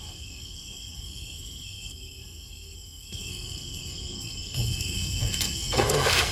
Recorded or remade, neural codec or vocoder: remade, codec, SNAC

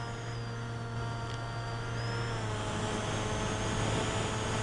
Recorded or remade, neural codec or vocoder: recorded